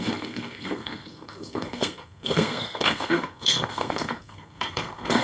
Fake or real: fake